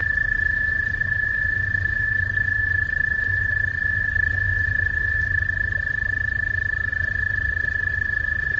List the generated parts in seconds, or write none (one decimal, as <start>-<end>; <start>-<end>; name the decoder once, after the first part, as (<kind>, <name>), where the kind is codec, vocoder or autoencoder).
0.0-3.7 (vocoder, BigVGAN v2); 4.5-5.4